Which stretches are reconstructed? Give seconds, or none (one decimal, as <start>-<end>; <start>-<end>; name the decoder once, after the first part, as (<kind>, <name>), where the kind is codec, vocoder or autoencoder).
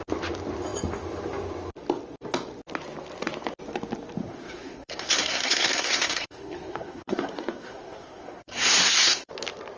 4.2-9.3 (codec, SNAC)